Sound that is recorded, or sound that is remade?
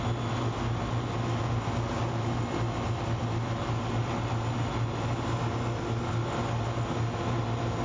recorded